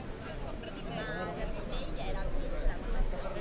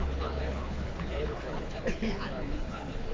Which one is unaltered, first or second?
first